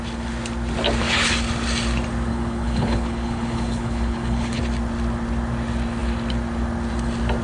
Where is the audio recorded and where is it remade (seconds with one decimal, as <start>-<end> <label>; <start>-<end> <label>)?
0.0-2.3 recorded; 2.3-4.6 remade; 4.6-7.4 recorded